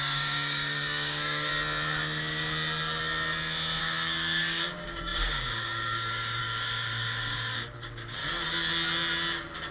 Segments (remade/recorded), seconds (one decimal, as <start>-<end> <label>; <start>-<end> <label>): 0.0-1.5 remade; 1.5-3.8 recorded; 3.8-8.2 remade; 8.2-9.7 recorded